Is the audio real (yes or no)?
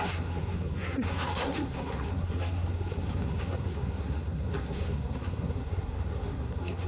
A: no